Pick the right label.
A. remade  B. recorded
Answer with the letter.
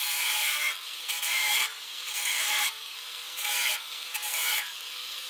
A